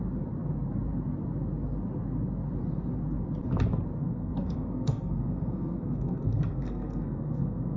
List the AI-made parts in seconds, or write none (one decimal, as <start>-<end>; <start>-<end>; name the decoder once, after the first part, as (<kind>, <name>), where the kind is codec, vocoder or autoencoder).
4.0-7.8 (codec, SNAC)